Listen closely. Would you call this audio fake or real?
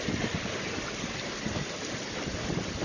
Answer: real